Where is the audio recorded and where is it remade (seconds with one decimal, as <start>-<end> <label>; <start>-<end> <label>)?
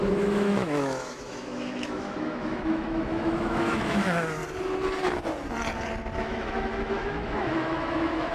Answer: 0.0-4.4 remade; 4.4-6.2 recorded; 6.2-8.3 remade